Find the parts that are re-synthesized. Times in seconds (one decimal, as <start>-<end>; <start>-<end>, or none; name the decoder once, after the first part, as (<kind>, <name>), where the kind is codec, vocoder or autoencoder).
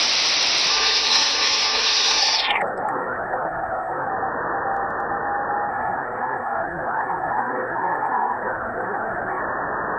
0.7-4.1 (codec, SNAC); 5.7-9.4